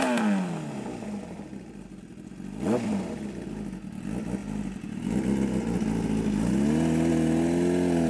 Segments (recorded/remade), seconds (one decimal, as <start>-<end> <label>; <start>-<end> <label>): 0.0-8.1 recorded

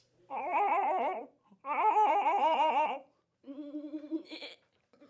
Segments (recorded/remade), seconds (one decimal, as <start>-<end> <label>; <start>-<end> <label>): 0.0-1.2 remade; 1.2-2.1 recorded; 2.1-5.1 remade

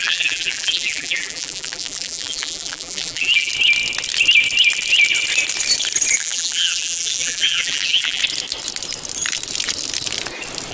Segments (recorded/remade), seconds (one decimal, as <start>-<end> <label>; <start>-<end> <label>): 0.0-3.5 remade; 3.5-6.2 recorded; 6.2-8.2 remade; 8.2-10.7 recorded

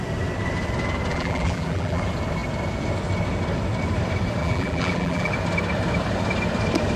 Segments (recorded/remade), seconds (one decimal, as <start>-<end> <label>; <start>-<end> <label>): 0.0-1.1 recorded; 1.1-2.0 remade; 2.0-4.4 recorded; 4.4-5.3 remade; 5.3-7.0 recorded

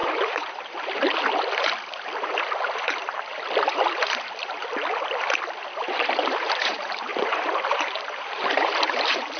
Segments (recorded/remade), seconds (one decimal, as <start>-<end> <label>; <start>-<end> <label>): 0.0-1.0 remade; 1.0-5.8 recorded; 5.8-9.4 remade

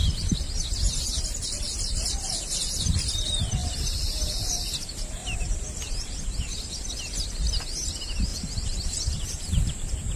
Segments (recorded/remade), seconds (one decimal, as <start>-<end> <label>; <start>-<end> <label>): 0.0-0.5 remade; 0.5-3.6 recorded; 3.6-4.5 remade; 4.5-5.2 recorded; 5.2-7.3 remade; 7.3-8.3 recorded; 8.3-9.1 remade; 9.1-10.2 recorded